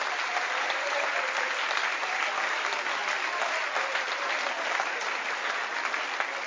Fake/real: fake